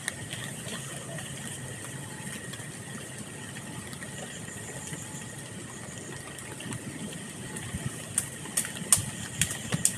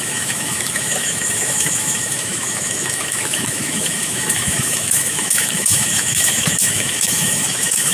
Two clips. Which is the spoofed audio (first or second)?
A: second